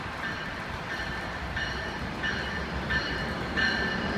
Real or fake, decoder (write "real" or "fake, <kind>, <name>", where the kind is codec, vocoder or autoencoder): fake, vocoder, BigVGAN v2